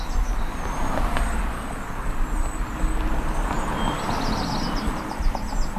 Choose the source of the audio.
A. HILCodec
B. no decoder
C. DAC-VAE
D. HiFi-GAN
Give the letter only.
B